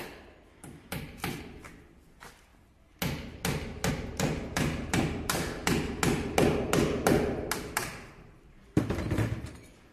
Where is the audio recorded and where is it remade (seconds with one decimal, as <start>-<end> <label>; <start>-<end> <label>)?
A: 0.0-2.5 remade; 2.5-3.9 recorded; 3.9-5.6 remade; 5.6-8.1 recorded; 8.1-9.9 remade